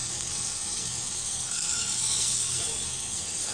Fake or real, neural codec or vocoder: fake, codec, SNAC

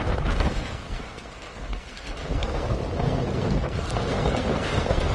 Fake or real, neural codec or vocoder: fake, codec, SNAC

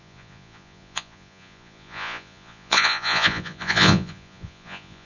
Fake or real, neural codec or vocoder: fake, vocoder, Vocos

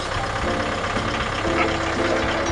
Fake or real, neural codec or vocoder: real